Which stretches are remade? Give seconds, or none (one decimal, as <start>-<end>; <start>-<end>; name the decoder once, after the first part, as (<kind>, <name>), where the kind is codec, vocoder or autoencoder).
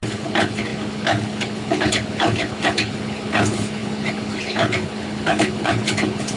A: 0.0-6.4 (codec, HILCodec)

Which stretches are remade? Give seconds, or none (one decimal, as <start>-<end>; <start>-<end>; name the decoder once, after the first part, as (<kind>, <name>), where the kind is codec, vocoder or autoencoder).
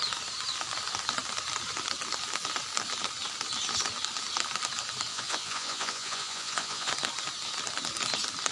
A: 5.1-6.9 (vocoder, Vocos)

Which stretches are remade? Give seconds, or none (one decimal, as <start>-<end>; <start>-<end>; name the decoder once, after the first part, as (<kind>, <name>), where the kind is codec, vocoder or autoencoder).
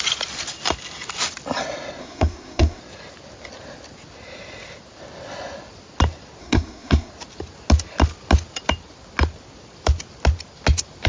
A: 2.0-2.8 (codec, SNAC); 6.4-7.1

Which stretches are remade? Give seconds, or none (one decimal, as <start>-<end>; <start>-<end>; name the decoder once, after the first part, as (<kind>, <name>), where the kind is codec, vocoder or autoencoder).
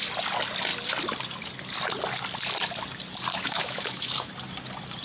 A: 3.3-4.3 (autoencoder, DAC-VAE)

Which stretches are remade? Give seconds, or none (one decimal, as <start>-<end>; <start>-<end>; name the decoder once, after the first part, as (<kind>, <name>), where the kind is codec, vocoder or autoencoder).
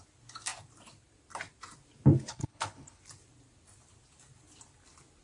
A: 2.1-3.0 (codec, HILCodec)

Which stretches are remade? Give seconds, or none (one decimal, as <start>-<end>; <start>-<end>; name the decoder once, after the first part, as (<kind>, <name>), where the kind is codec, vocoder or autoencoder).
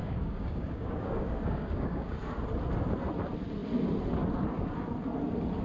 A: 0.0-2.2 (codec, DAC)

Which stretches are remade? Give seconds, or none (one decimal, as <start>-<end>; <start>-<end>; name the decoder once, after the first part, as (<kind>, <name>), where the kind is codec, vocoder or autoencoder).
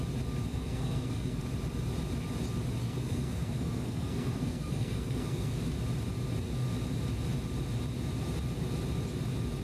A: 0.5-1.4 (codec, SNAC); 2.8-5.6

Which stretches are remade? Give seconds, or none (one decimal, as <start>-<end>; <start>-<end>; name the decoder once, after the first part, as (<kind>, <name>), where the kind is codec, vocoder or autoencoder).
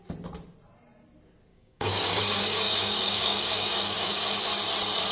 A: 1.5-4.4 (codec, DAC)